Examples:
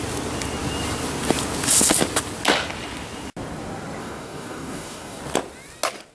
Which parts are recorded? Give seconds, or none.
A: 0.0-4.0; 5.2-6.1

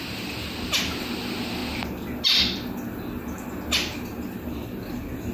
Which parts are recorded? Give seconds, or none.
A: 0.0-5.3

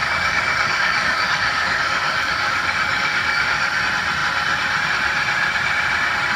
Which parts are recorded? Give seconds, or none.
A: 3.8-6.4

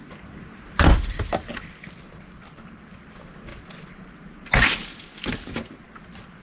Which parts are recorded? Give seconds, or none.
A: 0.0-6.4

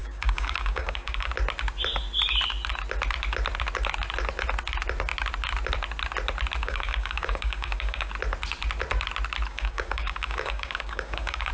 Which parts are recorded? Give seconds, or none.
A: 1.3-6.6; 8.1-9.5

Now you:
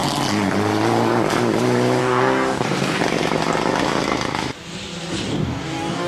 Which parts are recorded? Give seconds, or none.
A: 0.0-2.0; 3.0-5.3

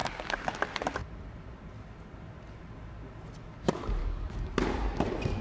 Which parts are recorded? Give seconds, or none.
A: 0.6-4.0; 4.5-5.4

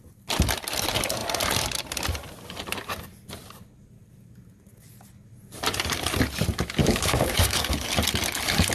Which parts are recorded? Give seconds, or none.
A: 0.0-6.8; 7.7-8.7